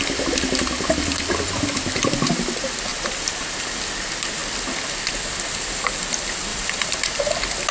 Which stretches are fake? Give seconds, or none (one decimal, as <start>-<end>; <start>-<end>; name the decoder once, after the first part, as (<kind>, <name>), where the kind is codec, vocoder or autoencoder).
2.9-3.8 (vocoder, BigVGAN v2); 6.5-7.2